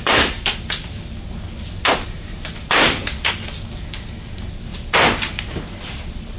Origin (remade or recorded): recorded